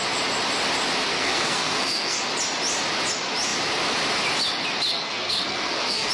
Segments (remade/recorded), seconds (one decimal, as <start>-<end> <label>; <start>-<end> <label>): 0.0-1.1 recorded; 1.1-2.2 remade; 2.2-4.9 recorded; 4.9-6.1 remade